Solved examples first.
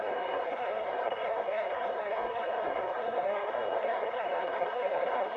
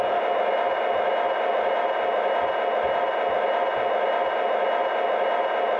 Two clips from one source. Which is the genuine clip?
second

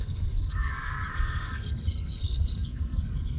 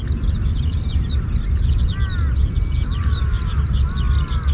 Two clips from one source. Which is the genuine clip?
second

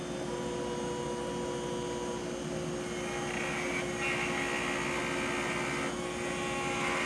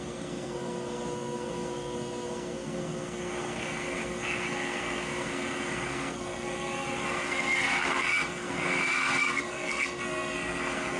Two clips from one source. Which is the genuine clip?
first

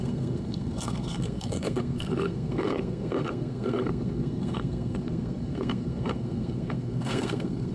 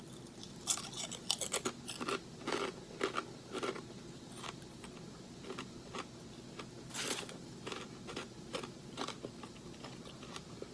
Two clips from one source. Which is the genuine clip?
second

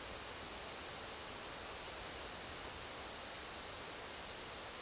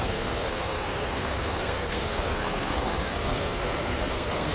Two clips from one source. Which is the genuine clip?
first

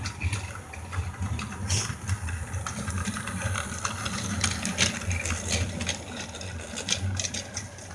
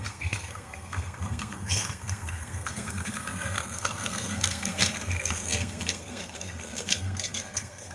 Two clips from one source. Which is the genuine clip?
first